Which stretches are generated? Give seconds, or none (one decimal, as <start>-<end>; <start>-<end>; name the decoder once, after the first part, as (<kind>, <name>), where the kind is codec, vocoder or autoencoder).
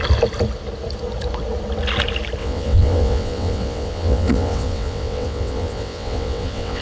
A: 2.4-6.8 (vocoder, WaveNeXt)